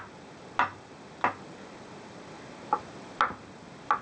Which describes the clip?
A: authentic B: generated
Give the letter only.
A